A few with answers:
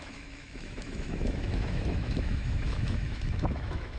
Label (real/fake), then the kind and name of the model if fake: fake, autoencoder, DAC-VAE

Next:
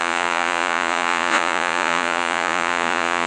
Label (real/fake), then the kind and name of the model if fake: fake, vocoder, Vocos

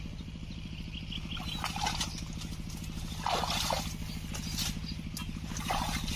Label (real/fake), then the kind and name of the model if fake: real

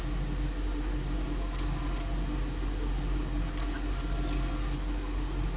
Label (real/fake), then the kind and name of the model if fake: real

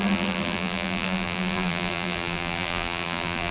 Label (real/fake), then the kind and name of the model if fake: fake, vocoder, BigVGAN v2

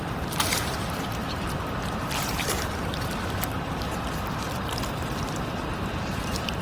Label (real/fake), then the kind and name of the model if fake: fake, vocoder, BigVGAN v2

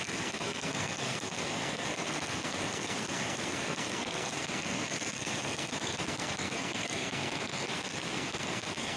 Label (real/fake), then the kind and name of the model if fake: fake, codec, SNAC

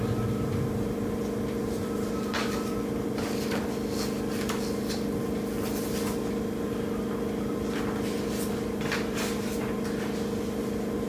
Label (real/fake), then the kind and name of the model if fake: real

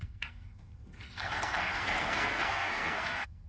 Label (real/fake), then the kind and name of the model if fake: fake, codec, SNAC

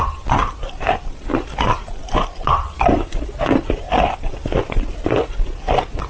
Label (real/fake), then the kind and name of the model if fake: real